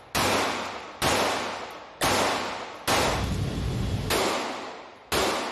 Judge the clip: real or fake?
real